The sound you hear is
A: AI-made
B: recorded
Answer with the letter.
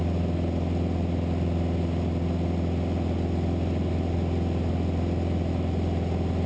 B